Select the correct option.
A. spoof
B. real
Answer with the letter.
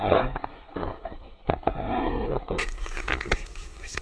A